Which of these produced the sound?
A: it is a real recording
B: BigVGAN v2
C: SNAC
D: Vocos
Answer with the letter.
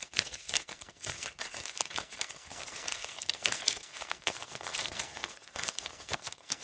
C